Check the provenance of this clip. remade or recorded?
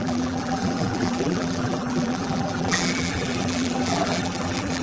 remade